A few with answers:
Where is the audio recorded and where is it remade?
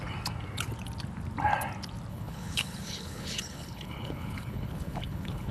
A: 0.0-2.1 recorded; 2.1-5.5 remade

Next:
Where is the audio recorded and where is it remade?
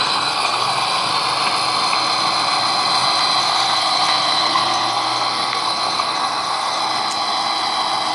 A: 0.0-1.1 remade; 1.1-3.4 recorded; 3.4-6.8 remade; 6.8-8.1 recorded